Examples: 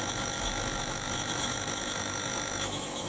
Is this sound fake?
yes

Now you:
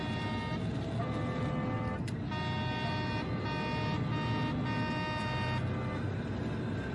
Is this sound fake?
no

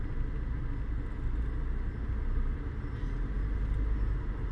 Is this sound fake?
no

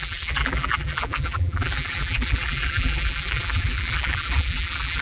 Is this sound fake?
yes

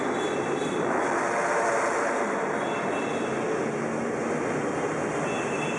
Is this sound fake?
no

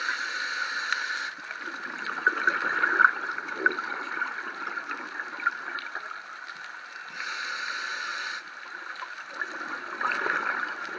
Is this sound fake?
no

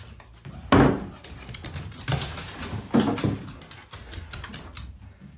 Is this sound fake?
no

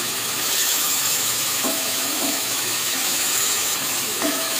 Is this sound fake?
yes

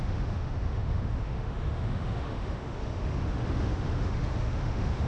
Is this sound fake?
yes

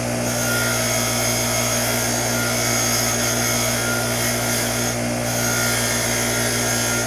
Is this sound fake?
no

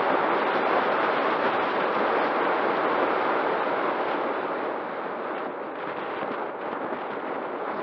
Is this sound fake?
no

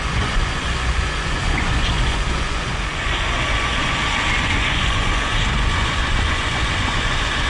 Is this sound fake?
yes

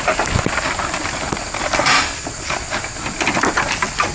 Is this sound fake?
no